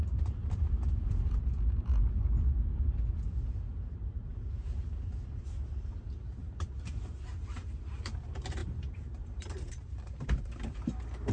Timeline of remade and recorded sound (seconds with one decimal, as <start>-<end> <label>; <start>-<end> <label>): 0.0-2.0 remade; 2.0-3.3 recorded; 3.3-11.3 remade